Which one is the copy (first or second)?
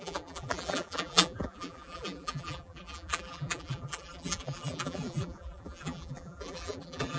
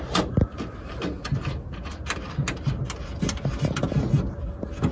first